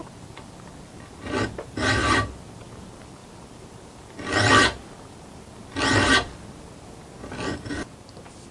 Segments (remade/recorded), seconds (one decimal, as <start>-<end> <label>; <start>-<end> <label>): 0.0-8.5 recorded